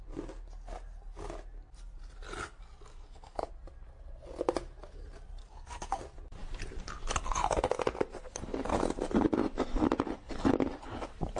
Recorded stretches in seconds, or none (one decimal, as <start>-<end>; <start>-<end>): 0.0-2.9; 3.5-5.4; 6.0-11.4

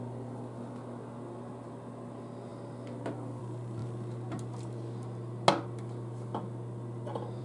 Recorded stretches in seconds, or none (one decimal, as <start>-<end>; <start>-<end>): 0.0-7.4

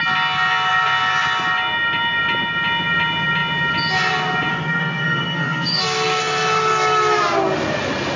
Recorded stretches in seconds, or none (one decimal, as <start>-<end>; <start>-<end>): 0.0-4.5; 6.2-8.2

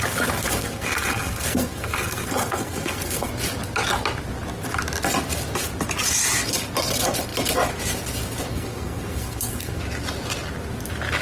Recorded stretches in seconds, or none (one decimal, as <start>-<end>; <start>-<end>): 0.0-0.5; 3.3-8.5; 9.8-11.2